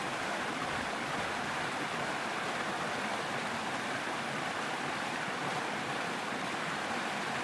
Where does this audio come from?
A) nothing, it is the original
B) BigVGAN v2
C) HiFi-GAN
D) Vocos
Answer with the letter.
B